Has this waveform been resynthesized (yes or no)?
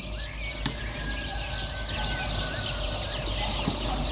no